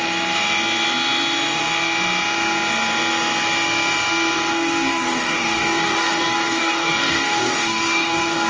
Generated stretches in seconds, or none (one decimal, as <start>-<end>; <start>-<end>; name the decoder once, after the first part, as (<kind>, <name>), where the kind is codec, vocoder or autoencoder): 4.5-8.5 (codec, DAC)